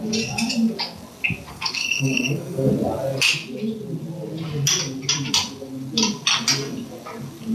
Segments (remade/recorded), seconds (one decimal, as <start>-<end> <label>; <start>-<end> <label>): 0.0-1.5 recorded; 1.5-2.7 remade; 2.7-7.5 recorded